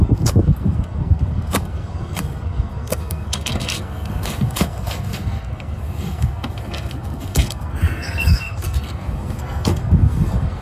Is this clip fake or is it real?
fake